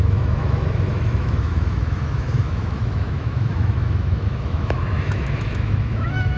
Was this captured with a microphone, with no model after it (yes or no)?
no